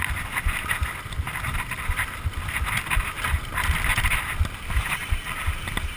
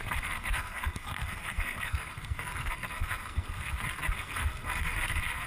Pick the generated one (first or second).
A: second